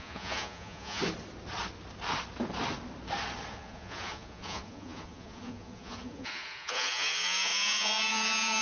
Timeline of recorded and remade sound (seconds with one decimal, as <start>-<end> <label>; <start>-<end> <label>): 0.0-1.0 remade; 1.0-3.5 recorded; 3.5-8.6 remade